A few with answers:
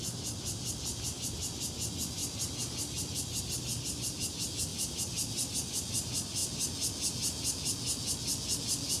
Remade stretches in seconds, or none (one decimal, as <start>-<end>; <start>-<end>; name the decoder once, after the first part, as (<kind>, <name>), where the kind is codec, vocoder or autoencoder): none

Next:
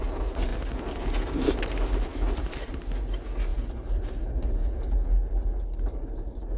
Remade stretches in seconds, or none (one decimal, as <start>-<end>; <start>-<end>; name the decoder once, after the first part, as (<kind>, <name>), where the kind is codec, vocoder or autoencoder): 2.1-3.1 (vocoder, BigVGAN v2); 3.5-4.7

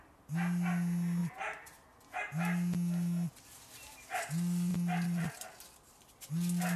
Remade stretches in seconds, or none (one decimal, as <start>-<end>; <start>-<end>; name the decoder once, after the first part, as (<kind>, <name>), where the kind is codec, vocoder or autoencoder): 4.7-6.3 (vocoder, BigVGAN v2)